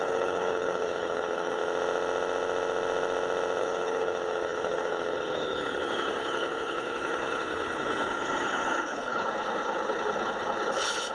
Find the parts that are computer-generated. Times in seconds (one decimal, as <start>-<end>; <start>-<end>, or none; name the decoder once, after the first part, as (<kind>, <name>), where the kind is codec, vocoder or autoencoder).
0.0-1.6 (codec, HILCodec); 3.6-11.1